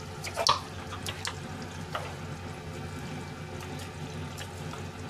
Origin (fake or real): real